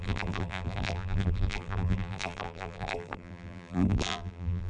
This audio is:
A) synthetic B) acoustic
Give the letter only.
A